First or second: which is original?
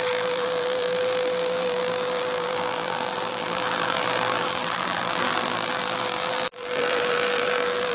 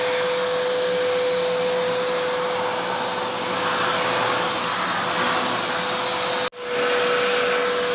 second